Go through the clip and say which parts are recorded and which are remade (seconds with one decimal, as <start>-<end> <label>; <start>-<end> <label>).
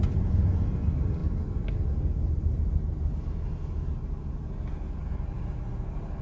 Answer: 0.0-6.2 recorded